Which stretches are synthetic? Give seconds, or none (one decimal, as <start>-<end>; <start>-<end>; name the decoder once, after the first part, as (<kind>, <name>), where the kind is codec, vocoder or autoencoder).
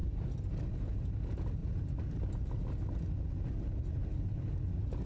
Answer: 0.0-0.7 (vocoder, BigVGAN v2); 1.6-2.3